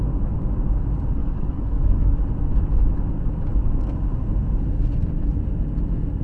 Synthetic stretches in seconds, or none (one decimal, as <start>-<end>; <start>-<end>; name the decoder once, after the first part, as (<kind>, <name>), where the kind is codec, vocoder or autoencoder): 1.2-2.2 (codec, DAC)

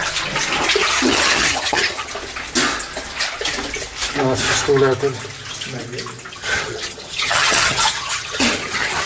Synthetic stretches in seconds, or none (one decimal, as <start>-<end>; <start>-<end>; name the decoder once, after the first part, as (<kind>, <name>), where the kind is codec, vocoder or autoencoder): 0.8-2.1 (vocoder, HiFi-GAN); 6.3-9.1

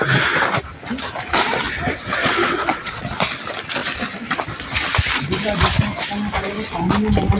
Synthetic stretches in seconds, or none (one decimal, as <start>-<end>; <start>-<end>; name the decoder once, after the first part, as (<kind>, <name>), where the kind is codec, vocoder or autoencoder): 2.2-3.0 (vocoder, Vocos)

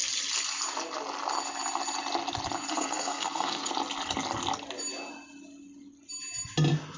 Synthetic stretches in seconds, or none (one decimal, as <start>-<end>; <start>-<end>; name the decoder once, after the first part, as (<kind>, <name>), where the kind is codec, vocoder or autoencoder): 2.7-3.7 (codec, SNAC)

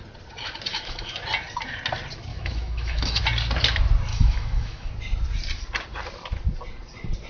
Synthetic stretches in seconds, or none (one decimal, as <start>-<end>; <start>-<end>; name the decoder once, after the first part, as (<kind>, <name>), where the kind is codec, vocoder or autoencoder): 0.7-1.2 (autoencoder, DAC-VAE); 2.3-3.2; 4.1-4.9